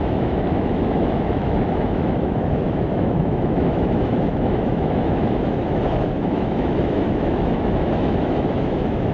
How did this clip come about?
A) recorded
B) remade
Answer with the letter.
B